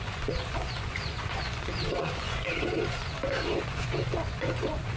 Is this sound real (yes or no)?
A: no